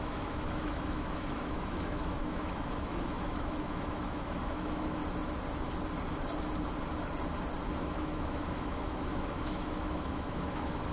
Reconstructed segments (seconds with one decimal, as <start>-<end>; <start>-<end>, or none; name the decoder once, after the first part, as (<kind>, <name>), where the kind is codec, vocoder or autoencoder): 0.0-5.0 (autoencoder, DAC-VAE); 7.8-10.9